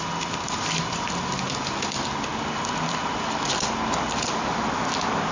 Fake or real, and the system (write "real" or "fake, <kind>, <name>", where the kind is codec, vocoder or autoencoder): real